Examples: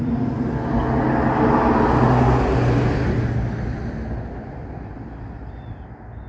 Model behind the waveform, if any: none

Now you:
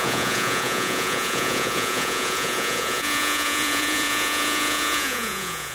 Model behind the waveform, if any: vocoder, Vocos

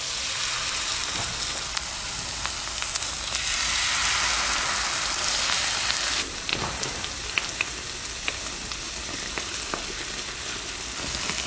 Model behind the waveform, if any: none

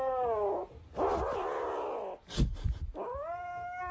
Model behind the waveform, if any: none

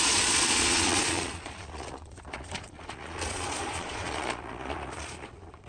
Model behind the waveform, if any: vocoder, Vocos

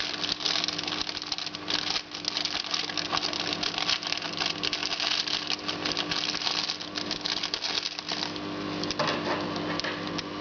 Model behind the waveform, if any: none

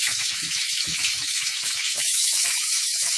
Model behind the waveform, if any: autoencoder, DAC-VAE